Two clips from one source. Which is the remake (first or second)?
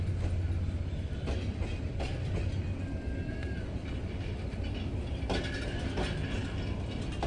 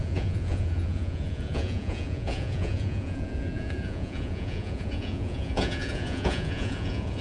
second